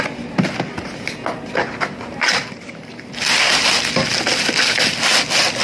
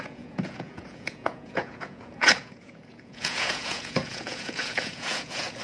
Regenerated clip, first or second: second